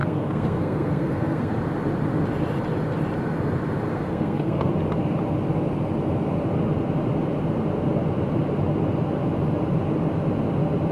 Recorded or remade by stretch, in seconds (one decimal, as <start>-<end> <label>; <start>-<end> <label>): 0.0-1.6 remade; 1.6-3.9 recorded; 3.9-4.7 remade; 4.7-10.9 recorded

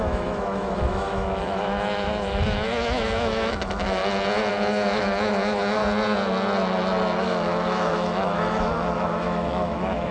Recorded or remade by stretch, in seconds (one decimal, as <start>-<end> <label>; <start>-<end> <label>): 0.0-4.0 remade; 4.0-4.5 recorded; 4.5-5.8 remade; 5.8-7.2 recorded; 7.2-10.1 remade